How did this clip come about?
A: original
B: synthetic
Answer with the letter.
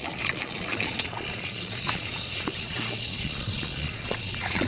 B